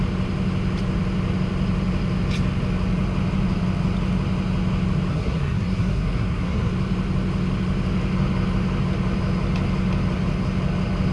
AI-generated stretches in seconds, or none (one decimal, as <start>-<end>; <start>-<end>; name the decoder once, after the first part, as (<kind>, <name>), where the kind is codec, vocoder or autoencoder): 5.1-6.7 (codec, SNAC)